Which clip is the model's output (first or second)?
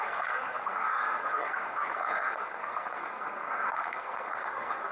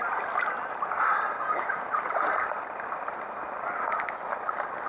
first